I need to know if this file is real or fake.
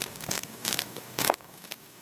fake